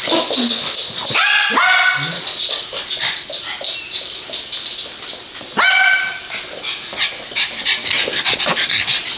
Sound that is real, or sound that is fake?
real